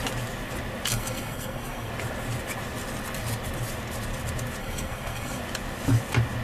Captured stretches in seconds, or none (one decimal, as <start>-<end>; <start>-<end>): 0.0-0.9; 1.9-4.6; 5.4-6.4